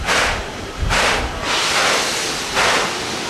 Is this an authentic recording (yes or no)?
yes